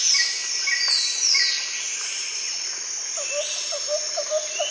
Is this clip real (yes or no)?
yes